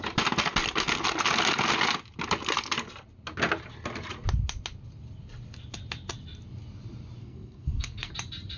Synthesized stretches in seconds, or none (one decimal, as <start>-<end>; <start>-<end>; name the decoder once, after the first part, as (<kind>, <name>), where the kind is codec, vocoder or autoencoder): 7.2-8.1 (codec, SNAC)